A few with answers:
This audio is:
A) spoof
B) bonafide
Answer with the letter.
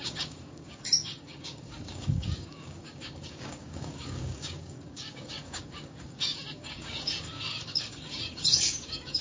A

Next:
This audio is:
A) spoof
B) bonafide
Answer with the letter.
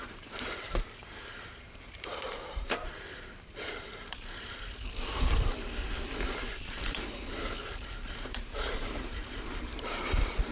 A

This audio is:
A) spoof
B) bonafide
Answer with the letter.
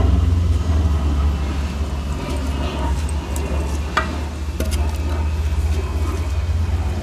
B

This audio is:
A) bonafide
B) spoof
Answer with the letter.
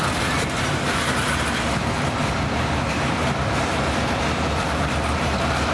B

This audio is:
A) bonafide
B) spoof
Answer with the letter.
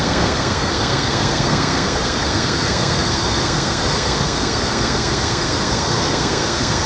B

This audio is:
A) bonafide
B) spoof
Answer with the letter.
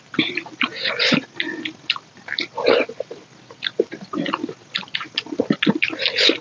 A